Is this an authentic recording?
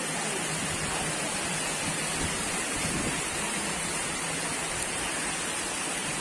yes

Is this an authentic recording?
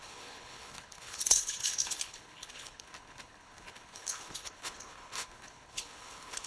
no